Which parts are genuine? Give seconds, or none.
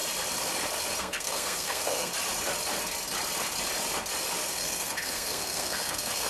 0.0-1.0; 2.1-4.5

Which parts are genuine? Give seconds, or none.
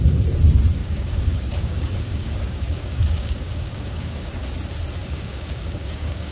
0.0-0.8; 4.3-5.0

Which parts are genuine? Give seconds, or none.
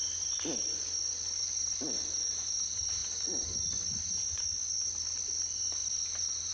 0.0-6.5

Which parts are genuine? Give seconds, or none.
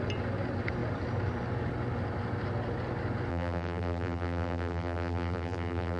0.0-3.3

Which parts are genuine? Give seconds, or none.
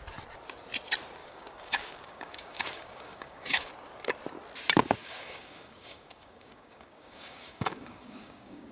0.0-1.2; 3.7-5.0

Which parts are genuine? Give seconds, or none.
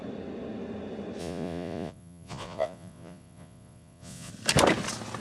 0.0-1.2; 4.3-5.2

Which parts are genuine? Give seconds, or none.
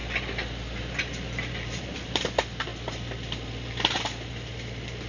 none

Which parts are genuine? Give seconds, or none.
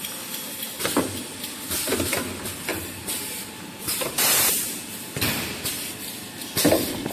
0.0-2.7; 4.8-7.1